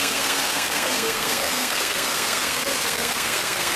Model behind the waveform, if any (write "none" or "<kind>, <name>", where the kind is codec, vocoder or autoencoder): codec, SNAC